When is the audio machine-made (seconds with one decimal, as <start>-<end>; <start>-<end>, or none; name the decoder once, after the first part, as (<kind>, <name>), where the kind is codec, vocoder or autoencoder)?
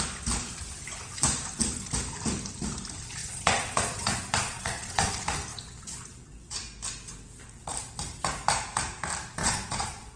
3.2-5.1 (vocoder, Vocos); 9.4-10.2